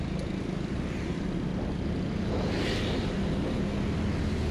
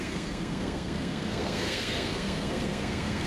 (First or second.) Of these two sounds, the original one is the first